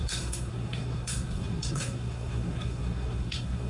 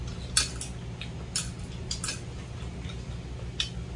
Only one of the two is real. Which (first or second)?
second